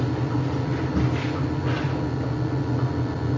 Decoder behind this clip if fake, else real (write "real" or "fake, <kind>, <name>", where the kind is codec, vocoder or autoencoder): real